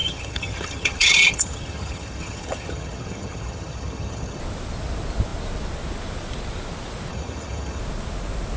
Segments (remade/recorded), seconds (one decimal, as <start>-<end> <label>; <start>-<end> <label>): 0.0-4.4 remade; 4.4-7.1 recorded; 7.1-7.8 remade; 7.8-8.6 recorded